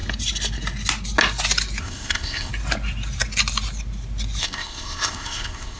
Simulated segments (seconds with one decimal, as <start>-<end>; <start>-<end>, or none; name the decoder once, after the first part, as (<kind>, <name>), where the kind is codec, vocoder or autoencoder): 1.8-2.5 (codec, ZipCodec); 4.4-5.8